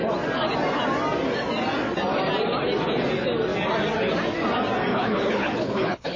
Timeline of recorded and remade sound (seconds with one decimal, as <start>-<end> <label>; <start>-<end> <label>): 0.0-4.9 recorded; 4.9-6.2 remade